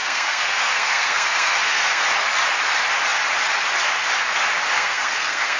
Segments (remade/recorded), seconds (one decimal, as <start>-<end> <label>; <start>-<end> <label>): 0.0-2.0 remade; 2.0-4.7 recorded; 4.7-5.6 remade